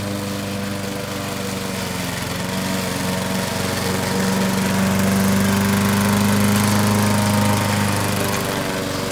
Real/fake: real